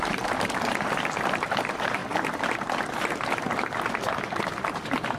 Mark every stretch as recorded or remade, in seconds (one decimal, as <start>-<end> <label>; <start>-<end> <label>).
0.0-2.0 remade; 2.0-5.2 recorded